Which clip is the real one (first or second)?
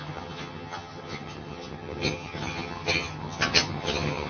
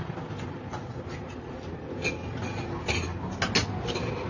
second